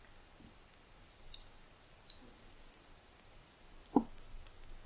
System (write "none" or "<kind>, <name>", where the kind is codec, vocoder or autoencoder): none